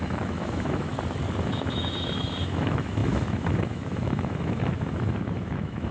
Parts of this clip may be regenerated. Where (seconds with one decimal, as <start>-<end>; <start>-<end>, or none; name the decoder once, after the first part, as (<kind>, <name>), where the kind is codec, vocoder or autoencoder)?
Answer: 0.0-0.9 (autoencoder, DAC-VAE); 1.5-5.9